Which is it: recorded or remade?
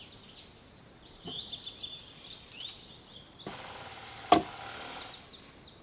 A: recorded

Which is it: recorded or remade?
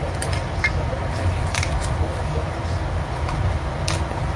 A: recorded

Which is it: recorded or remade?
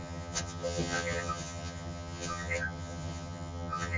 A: remade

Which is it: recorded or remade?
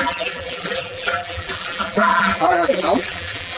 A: remade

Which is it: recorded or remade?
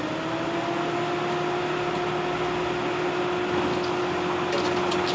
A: recorded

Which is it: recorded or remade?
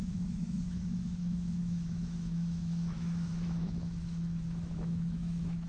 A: remade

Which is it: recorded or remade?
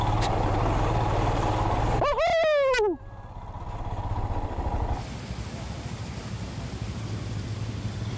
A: recorded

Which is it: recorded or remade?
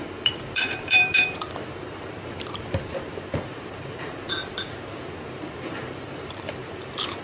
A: remade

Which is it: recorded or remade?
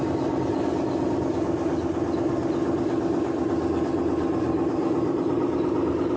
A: recorded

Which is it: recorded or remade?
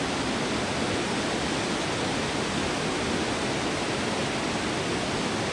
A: recorded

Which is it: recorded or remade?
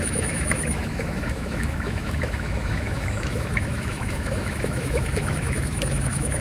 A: remade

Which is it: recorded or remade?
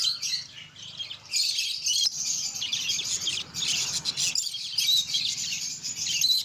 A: recorded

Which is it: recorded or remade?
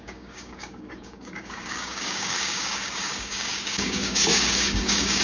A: remade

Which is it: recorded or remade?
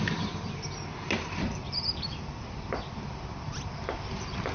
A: remade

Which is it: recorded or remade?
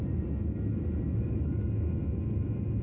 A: recorded